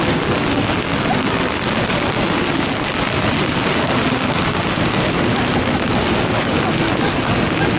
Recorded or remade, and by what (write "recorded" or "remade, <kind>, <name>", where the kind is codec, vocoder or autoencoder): recorded